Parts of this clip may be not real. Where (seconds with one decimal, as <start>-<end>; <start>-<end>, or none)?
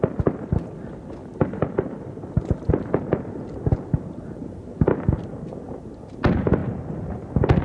1.2-2.7; 6.6-7.1